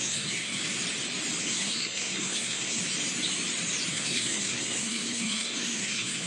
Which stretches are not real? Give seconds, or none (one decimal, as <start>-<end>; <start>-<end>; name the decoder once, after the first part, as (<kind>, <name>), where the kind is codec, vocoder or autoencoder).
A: 0.0-0.6 (codec, SNAC); 1.4-2.8; 3.9-6.3